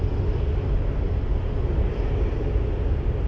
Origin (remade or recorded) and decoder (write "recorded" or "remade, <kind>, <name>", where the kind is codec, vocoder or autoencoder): recorded